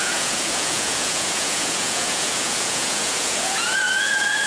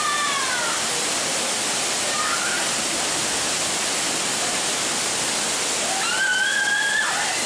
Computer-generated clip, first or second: first